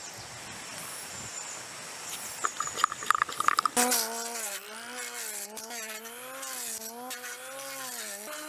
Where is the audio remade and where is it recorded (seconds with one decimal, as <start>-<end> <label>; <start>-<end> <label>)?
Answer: 0.0-8.5 recorded